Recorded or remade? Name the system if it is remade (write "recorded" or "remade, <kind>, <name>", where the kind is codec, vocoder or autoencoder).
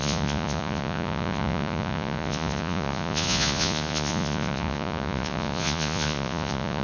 remade, vocoder, Vocos